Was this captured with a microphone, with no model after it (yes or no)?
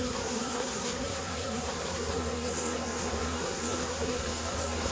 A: no